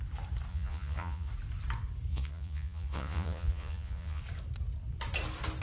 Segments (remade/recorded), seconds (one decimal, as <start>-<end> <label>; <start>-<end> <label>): 0.0-0.5 recorded; 0.5-1.3 remade; 1.3-2.1 recorded; 2.1-4.2 remade; 4.2-5.6 recorded